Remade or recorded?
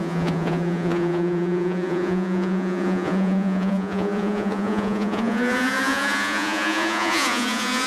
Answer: remade